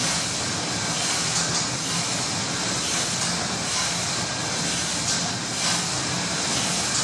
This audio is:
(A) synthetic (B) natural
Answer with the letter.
B